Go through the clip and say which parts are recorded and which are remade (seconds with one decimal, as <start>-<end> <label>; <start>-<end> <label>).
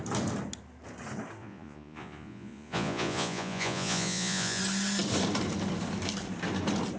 0.0-1.4 recorded; 1.4-4.6 remade; 4.6-7.0 recorded